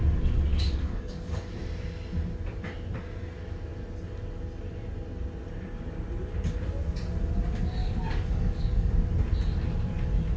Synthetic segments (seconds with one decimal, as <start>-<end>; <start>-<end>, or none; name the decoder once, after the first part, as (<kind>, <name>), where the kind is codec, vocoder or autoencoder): 0.5-1.5 (codec, DAC); 7.8-8.9